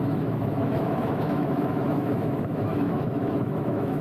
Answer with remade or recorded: remade